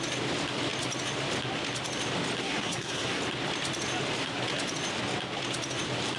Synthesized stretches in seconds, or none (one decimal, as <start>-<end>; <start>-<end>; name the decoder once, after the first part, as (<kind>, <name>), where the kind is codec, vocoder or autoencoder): 2.4-3.2 (codec, SNAC)